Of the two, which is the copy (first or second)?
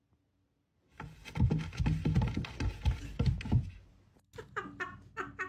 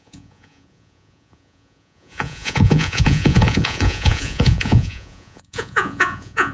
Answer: second